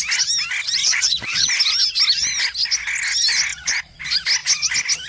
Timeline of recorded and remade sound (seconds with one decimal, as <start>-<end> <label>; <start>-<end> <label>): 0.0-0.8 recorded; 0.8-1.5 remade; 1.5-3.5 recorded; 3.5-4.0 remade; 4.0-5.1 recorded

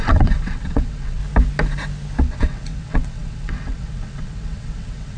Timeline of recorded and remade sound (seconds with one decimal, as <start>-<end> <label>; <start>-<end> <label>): 0.0-1.2 remade; 1.2-2.2 recorded; 2.2-5.2 remade

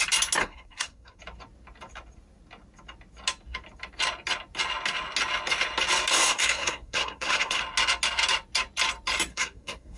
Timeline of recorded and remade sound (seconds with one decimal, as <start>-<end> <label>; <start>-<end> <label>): 0.0-0.4 recorded; 0.4-1.2 remade; 1.2-6.1 recorded; 6.1-7.6 remade; 7.6-9.3 recorded; 9.3-10.0 remade

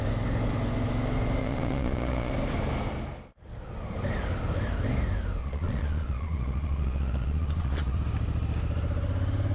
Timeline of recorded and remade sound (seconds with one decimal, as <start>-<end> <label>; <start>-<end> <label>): 0.0-1.4 recorded; 1.4-2.3 remade; 2.3-5.4 recorded; 5.4-8.0 remade; 8.0-9.5 recorded

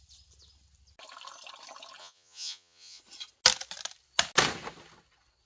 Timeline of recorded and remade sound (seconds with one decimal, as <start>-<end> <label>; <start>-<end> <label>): 0.0-2.0 recorded; 2.0-3.0 remade; 3.0-5.5 recorded